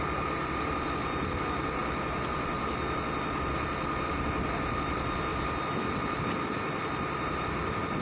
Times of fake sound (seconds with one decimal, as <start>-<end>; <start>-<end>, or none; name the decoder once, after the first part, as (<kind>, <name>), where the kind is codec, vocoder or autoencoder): none